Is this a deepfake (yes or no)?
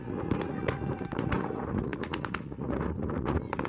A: yes